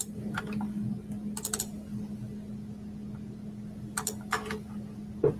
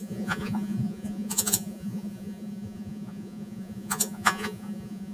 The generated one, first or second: second